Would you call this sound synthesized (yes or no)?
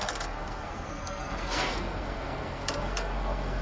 yes